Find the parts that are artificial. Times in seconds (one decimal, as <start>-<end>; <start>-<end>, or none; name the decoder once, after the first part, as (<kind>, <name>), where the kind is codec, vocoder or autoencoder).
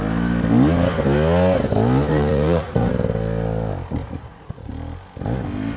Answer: 2.1-2.9 (vocoder, Vocos); 4.0-4.7